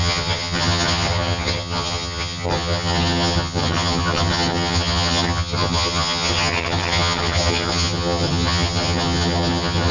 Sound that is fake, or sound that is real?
fake